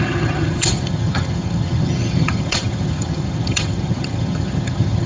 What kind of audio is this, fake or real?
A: fake